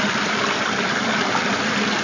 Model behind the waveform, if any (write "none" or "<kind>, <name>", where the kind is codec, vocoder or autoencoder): none